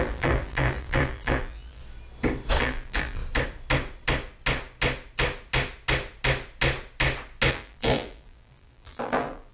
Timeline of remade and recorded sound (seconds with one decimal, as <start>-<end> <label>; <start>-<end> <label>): 0.0-1.8 remade; 1.8-2.6 recorded; 2.6-3.2 remade; 3.2-7.5 recorded; 7.5-9.5 remade